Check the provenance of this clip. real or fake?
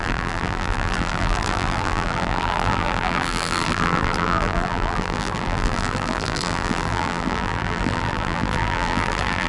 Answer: fake